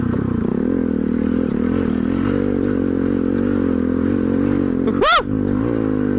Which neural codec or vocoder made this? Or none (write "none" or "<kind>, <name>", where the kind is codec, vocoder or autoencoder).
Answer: none